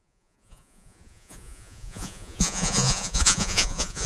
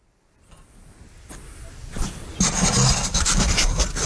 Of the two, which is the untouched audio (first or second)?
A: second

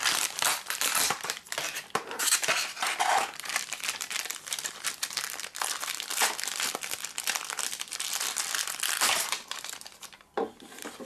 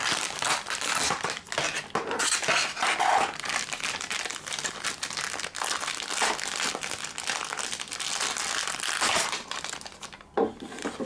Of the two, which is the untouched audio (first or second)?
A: second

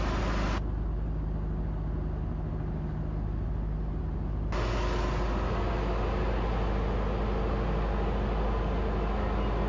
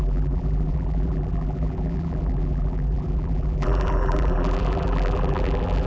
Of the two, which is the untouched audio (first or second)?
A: first